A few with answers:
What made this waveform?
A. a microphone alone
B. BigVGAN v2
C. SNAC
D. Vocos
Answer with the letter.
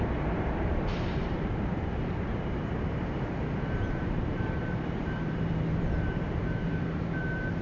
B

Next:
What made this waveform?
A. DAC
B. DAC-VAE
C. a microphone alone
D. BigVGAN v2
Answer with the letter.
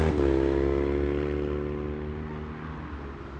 C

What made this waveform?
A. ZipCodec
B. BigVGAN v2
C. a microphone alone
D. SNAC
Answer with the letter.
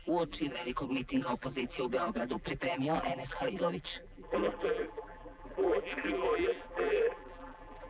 B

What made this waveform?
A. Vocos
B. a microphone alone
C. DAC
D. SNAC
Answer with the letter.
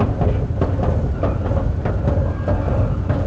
B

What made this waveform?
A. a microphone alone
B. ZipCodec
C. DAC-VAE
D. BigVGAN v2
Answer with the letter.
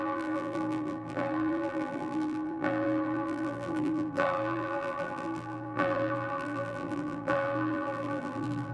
D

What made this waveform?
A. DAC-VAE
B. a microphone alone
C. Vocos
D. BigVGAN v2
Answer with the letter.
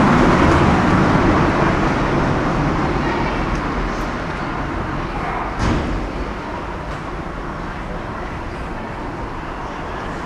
B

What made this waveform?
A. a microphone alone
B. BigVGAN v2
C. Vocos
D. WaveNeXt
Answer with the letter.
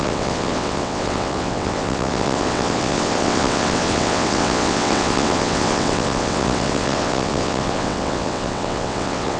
D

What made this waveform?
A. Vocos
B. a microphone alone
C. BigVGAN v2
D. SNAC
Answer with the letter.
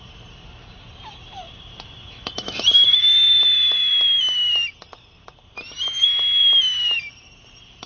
C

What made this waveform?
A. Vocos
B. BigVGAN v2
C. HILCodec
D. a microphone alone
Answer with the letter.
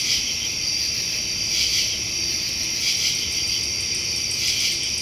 D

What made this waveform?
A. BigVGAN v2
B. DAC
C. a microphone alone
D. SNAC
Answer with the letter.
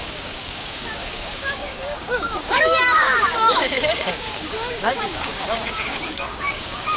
B